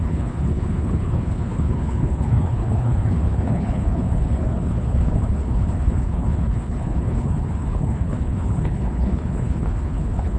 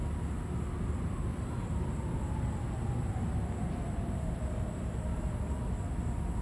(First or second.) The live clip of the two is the second